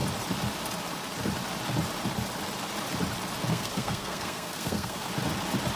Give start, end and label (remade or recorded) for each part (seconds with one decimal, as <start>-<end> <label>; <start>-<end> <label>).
0.0-3.5 recorded; 3.5-5.1 remade; 5.1-5.8 recorded